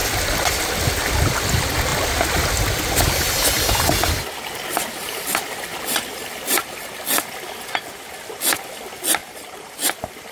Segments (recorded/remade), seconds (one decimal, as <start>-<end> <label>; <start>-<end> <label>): 0.0-5.7 recorded; 5.7-7.2 remade; 7.2-9.2 recorded; 9.2-10.3 remade